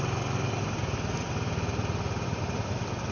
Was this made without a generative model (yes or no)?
yes